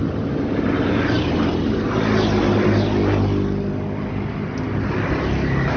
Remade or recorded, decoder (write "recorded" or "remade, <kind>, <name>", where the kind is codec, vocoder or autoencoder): recorded